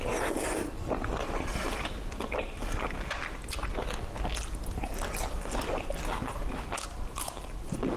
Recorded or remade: recorded